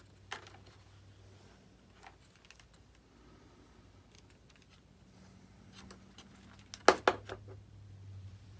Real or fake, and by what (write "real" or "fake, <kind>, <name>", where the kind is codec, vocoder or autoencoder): real